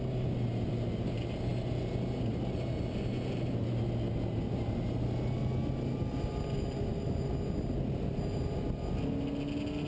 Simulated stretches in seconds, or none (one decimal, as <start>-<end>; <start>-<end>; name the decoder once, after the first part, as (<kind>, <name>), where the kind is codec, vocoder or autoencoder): none